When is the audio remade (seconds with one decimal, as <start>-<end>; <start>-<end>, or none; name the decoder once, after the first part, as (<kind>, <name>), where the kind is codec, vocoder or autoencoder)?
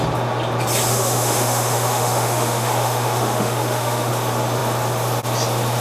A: 0.9-4.1 (autoencoder, DAC-VAE)